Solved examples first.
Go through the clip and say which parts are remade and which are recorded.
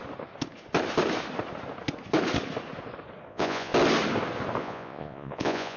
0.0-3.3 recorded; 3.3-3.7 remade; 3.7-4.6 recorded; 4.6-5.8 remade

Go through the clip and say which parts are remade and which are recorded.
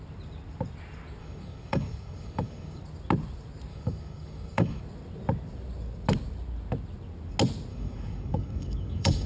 0.0-1.2 recorded; 1.2-2.8 remade; 2.8-3.7 recorded; 3.7-4.8 remade; 4.8-7.7 recorded; 7.7-9.3 remade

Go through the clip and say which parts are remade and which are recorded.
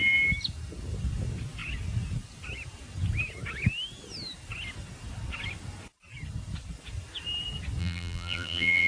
0.0-7.8 recorded; 7.8-8.9 remade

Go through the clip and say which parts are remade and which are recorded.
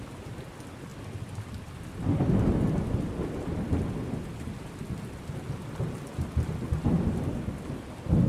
0.0-8.3 recorded